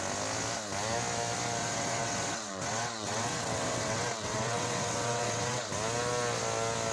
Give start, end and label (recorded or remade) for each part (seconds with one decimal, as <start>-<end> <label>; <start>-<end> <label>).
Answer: 0.0-1.6 recorded; 1.6-5.7 remade; 5.7-6.9 recorded